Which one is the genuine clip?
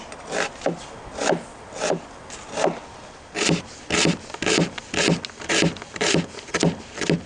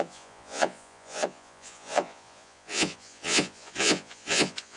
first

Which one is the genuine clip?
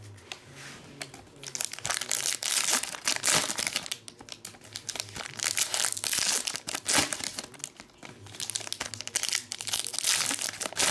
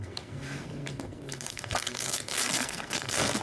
first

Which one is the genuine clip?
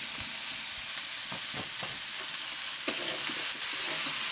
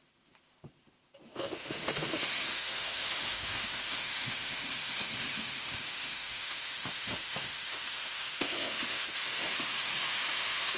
first